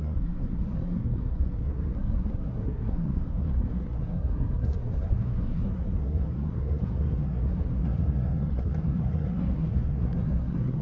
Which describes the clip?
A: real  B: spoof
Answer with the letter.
B